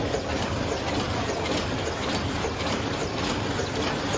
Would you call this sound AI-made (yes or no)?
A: no